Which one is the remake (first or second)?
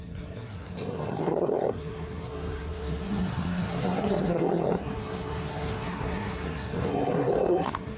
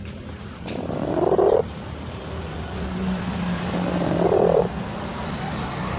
first